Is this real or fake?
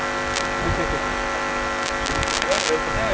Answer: real